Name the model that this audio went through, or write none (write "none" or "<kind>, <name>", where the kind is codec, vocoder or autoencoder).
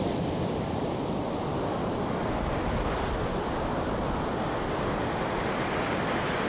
none